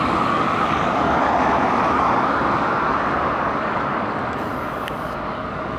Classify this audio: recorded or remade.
remade